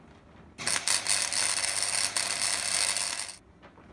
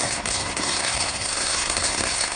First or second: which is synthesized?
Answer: second